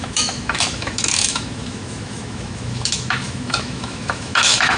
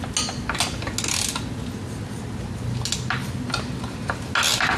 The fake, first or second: first